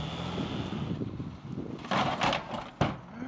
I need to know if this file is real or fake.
real